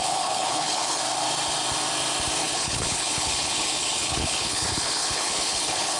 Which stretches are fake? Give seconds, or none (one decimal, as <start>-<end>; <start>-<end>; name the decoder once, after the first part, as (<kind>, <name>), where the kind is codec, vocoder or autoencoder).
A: 0.0-1.0 (codec, HILCodec); 2.4-6.0